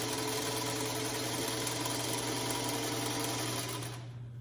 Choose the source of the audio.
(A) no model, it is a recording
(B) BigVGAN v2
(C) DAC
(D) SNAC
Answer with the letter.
A